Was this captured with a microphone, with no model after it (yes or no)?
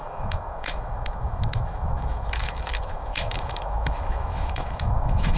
no